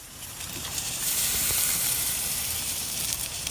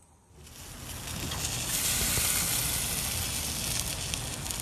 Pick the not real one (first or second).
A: first